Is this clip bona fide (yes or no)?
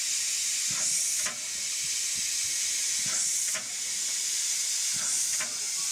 yes